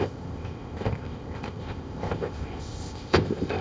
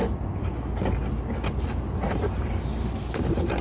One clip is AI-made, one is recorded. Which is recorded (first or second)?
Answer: second